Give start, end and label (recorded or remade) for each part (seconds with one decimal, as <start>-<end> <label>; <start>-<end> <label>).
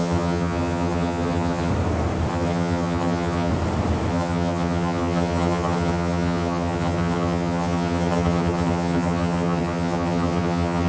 0.0-1.7 remade; 1.7-2.3 recorded; 2.3-3.5 remade; 3.5-4.1 recorded; 4.1-10.9 remade